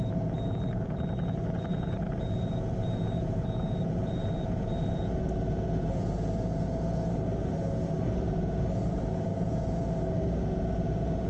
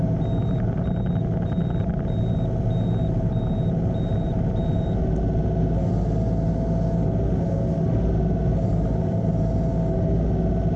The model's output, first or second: first